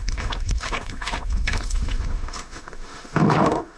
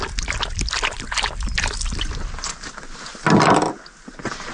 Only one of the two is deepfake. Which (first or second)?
first